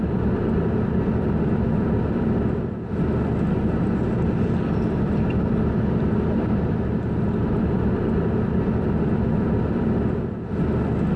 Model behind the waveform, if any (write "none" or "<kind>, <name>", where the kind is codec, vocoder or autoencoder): none